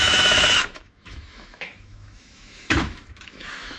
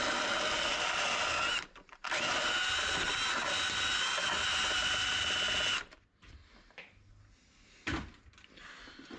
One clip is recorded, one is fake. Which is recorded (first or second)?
second